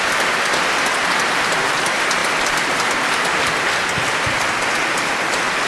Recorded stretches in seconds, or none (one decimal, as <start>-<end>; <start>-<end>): 0.0-5.7